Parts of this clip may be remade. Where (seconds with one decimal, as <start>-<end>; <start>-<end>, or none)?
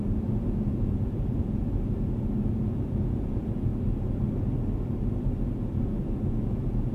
0.0-1.6; 2.5-3.7; 5.8-6.9